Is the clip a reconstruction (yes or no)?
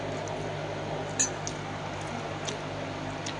no